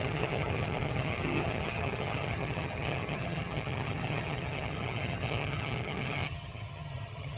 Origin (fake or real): fake